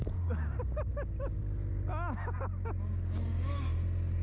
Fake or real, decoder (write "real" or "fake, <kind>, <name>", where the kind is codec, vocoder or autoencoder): real